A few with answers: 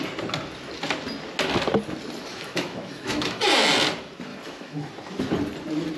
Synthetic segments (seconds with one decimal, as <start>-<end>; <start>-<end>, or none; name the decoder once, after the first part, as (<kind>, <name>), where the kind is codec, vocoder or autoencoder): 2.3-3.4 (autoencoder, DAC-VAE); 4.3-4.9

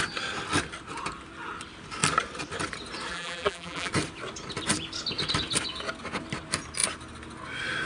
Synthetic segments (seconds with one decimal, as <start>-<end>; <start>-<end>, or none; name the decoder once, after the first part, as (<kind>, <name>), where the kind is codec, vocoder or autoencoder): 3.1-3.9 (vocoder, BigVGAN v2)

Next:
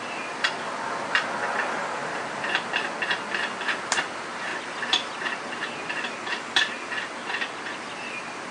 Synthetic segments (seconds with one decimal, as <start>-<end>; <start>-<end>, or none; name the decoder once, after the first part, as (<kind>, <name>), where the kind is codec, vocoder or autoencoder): none